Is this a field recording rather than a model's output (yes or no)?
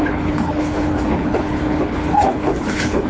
no